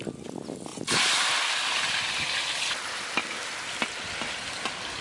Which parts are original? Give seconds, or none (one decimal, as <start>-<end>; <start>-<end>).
0.0-5.0